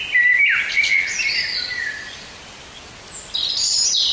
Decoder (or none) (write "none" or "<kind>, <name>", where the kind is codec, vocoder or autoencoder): none